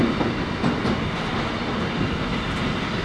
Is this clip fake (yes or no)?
no